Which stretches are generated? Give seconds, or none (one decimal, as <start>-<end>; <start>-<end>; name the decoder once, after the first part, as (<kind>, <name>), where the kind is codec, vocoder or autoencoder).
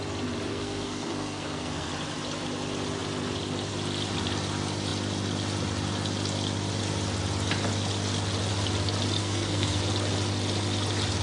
0.5-1.9 (codec, SNAC); 9.2-9.8